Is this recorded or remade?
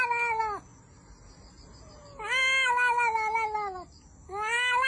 recorded